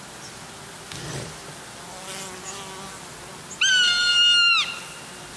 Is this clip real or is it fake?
real